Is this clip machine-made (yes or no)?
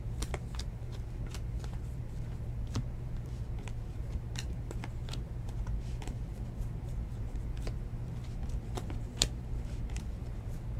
yes